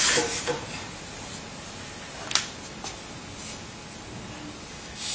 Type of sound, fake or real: real